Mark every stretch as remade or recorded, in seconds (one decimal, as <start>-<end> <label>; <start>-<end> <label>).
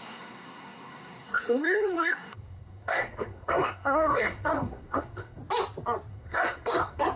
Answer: 0.0-5.4 remade; 5.4-6.1 recorded; 6.1-7.2 remade